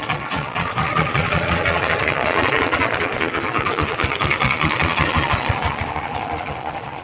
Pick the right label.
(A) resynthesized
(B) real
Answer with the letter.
A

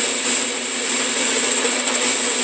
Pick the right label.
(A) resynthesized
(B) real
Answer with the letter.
B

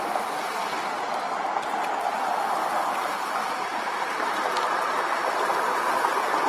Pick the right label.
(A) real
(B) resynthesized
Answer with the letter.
A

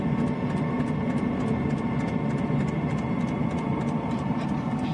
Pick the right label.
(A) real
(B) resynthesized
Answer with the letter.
A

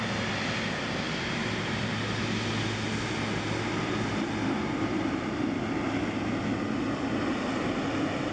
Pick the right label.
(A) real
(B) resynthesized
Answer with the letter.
A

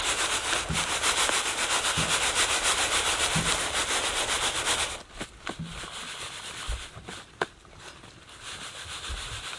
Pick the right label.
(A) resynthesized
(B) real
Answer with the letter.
B